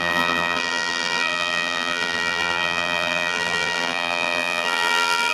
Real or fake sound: fake